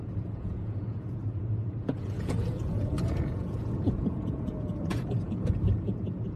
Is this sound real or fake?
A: fake